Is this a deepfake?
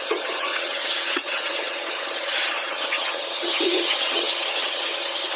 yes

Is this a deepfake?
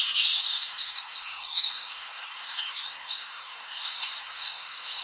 yes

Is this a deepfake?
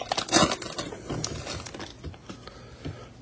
no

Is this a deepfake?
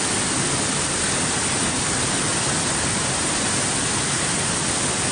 no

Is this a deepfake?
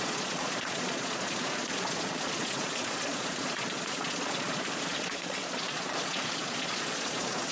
yes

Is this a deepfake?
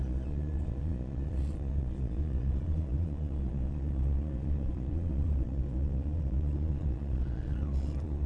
yes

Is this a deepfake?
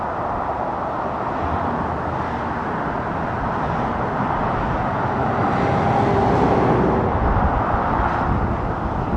no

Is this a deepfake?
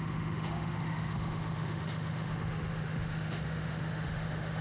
yes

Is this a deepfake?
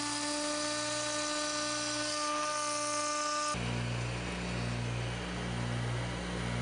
no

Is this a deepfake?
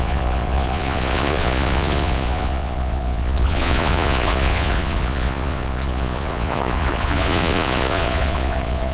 yes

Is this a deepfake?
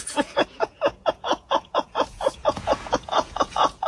yes